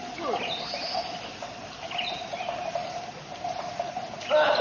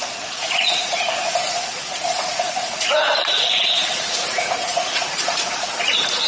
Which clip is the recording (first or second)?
first